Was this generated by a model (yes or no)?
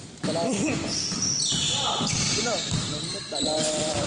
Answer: yes